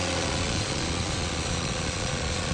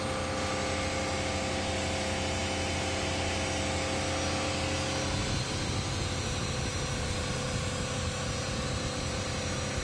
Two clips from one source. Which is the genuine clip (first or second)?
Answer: second